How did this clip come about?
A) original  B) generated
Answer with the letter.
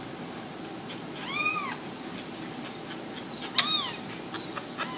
A